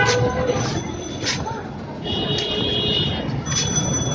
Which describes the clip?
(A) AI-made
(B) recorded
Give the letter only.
B